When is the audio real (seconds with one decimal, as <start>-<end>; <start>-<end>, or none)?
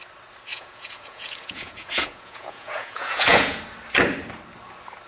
0.0-0.5; 3.6-5.1